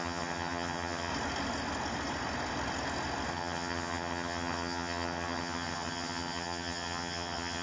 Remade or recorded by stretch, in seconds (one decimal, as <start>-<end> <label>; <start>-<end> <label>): 0.0-1.1 remade; 1.1-3.3 recorded; 3.3-7.6 remade